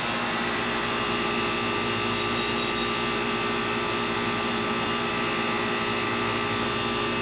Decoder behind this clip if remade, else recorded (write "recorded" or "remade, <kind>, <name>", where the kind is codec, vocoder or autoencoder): recorded